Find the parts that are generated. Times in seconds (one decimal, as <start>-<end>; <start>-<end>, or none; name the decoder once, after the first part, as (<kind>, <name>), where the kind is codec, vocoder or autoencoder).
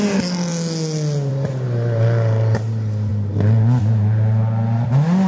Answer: none